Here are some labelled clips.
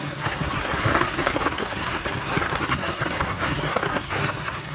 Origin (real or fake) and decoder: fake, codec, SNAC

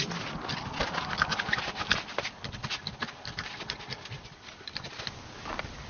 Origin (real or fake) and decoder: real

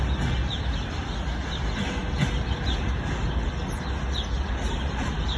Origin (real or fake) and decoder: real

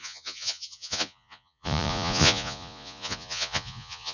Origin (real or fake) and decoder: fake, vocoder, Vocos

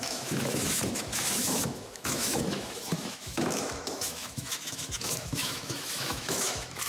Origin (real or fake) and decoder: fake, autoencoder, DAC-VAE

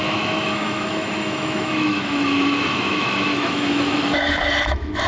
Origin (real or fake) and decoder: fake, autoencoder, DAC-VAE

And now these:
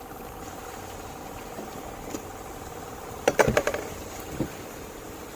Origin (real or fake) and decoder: fake, vocoder, BigVGAN v2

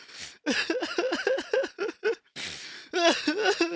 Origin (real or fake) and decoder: real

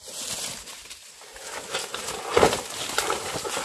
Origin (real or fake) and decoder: real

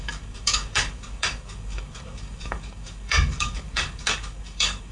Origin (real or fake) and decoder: fake, codec, DAC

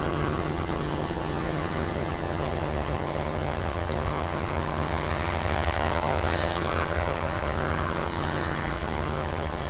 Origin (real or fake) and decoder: fake, vocoder, HiFi-GAN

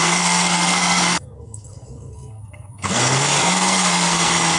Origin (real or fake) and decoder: fake, codec, SNAC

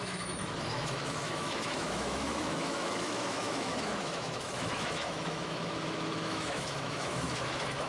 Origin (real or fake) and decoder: fake, autoencoder, DAC-VAE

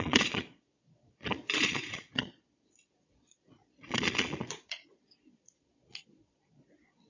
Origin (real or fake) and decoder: fake, vocoder, Vocos